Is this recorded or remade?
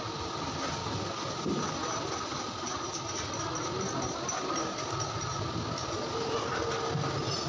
recorded